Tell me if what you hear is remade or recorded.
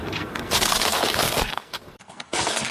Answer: remade